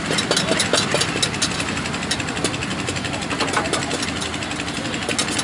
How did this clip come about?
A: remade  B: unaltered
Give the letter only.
B